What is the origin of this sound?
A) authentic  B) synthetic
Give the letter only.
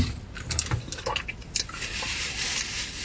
A